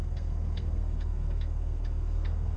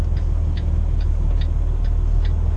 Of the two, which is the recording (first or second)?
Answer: second